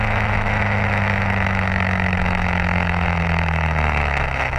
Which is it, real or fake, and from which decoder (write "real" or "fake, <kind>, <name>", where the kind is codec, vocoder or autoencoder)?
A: fake, autoencoder, DAC-VAE